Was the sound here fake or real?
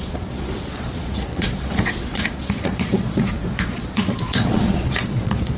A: fake